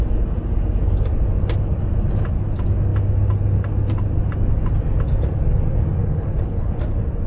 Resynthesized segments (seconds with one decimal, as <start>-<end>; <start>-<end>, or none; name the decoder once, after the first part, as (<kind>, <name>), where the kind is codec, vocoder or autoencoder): 6.0-6.7 (codec, HILCodec)